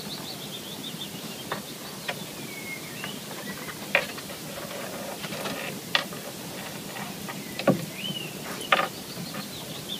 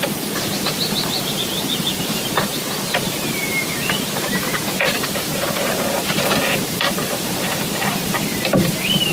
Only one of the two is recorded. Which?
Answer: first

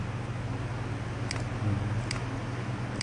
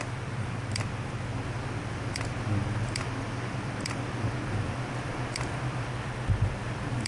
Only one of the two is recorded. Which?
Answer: first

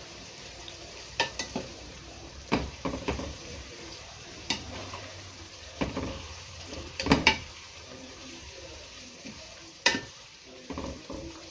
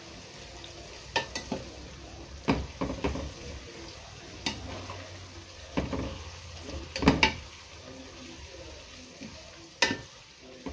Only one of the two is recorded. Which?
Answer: second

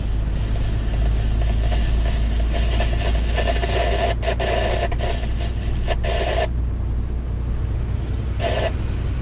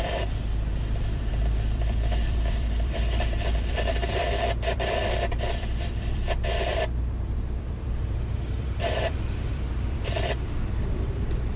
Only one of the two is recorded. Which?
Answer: first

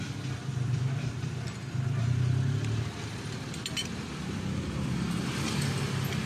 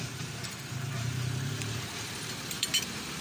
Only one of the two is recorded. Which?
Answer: first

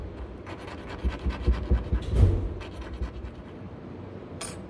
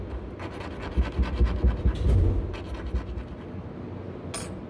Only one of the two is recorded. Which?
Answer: second